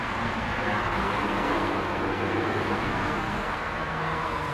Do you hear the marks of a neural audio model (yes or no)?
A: yes